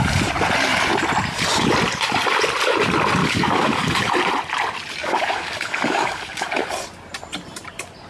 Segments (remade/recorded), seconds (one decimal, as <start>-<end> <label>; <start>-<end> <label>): 0.0-3.2 recorded; 3.2-4.1 remade; 4.1-5.0 recorded; 5.0-6.6 remade; 6.6-8.1 recorded